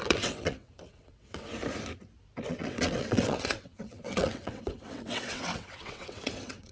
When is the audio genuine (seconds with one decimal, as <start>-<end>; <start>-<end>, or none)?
1.5-2.5